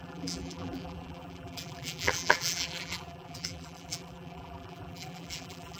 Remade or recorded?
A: remade